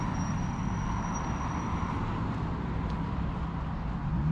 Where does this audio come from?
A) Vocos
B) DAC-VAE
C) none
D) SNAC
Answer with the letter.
C